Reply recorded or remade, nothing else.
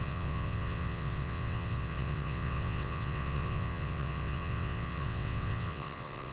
remade